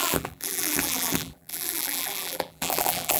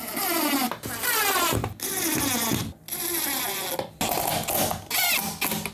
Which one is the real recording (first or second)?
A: second